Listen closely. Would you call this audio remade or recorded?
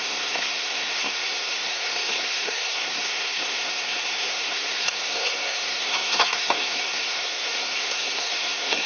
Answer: remade